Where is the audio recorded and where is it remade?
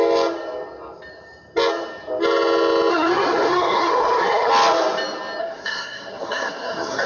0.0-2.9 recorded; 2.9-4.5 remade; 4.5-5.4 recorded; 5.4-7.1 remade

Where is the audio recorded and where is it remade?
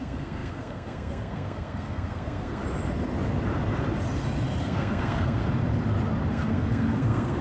0.0-2.6 remade; 2.6-4.6 recorded; 4.6-5.4 remade; 5.4-6.3 recorded; 6.3-7.4 remade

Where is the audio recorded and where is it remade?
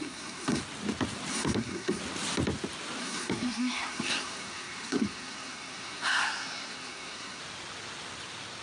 0.0-0.6 remade; 0.6-1.3 recorded; 1.3-2.0 remade; 2.0-3.0 recorded; 3.0-7.4 remade; 7.4-8.6 recorded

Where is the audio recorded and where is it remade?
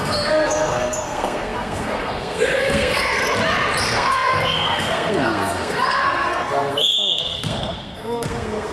0.0-3.2 remade; 3.2-3.8 recorded; 3.8-8.7 remade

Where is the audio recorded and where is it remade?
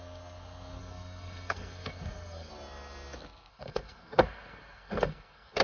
0.0-0.8 recorded; 0.8-2.5 remade; 2.5-3.5 recorded; 3.5-5.6 remade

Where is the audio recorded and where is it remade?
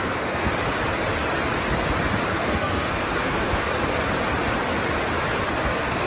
0.0-0.5 remade; 0.5-2.3 recorded; 2.3-3.6 remade; 3.6-5.6 recorded; 5.6-6.1 remade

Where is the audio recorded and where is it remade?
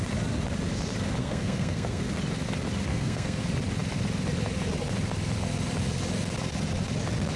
0.0-1.2 recorded; 1.2-2.0 remade; 2.0-2.9 recorded; 2.9-3.4 remade; 3.4-7.4 recorded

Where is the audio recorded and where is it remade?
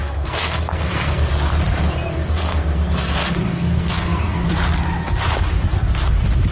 0.0-1.3 remade; 1.3-2.1 recorded; 2.1-4.5 remade; 4.5-6.5 recorded